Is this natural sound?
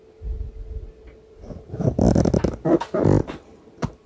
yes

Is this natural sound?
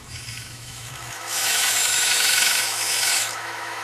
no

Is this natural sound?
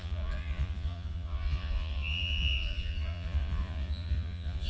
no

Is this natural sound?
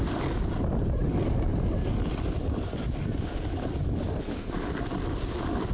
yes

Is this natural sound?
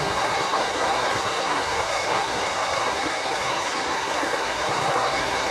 no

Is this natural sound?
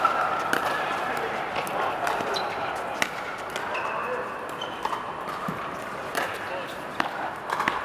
yes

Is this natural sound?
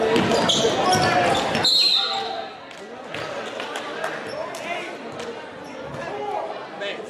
yes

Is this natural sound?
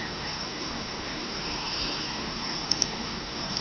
no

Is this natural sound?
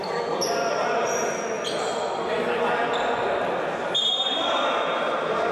yes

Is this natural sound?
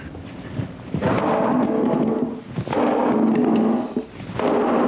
yes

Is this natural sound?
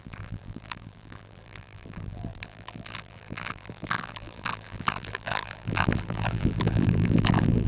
no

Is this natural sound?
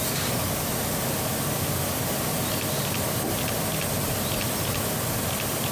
yes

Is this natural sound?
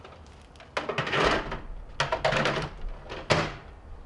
yes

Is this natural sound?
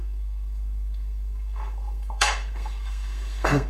no